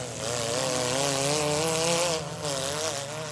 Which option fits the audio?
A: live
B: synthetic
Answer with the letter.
A